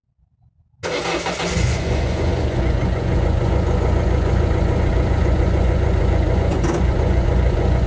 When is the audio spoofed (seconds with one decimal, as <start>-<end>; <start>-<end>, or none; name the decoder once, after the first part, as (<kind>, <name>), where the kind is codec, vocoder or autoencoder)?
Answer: 1.3-7.9 (vocoder, Vocos)